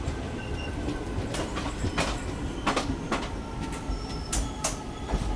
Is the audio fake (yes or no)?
no